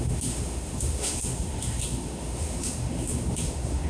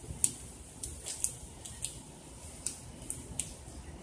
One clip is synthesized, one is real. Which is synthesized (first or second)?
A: first